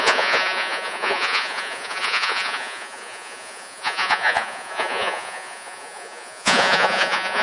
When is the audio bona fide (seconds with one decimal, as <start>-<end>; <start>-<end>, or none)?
none